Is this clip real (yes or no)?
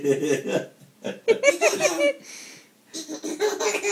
yes